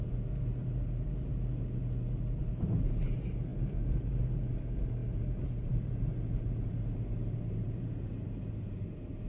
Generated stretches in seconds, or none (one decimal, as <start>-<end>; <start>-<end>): 0.0-1.8; 2.6-9.3